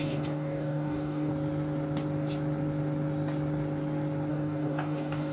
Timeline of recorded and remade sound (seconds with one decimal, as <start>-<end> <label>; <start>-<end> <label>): 0.0-1.3 remade; 1.3-4.3 recorded; 4.3-5.3 remade